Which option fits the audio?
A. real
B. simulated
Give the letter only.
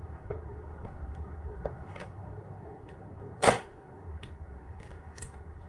B